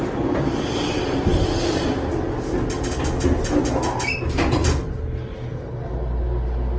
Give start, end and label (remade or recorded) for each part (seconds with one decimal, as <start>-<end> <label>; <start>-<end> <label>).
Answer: 0.0-6.8 recorded